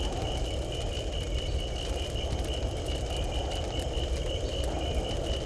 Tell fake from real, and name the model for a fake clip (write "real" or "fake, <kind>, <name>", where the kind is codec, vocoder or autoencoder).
real